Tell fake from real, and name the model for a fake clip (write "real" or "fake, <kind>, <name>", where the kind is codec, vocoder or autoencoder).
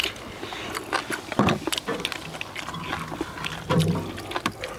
real